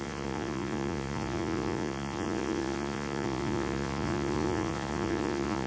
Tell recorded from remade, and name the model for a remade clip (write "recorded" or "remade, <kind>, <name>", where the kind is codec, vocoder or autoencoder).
remade, vocoder, Vocos